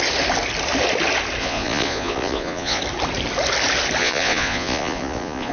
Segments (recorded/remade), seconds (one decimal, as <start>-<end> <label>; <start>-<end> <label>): 0.0-1.4 recorded; 1.4-2.8 remade; 2.8-4.0 recorded; 4.0-5.5 remade